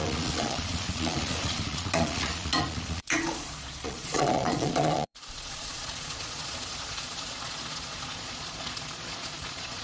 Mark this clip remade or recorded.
remade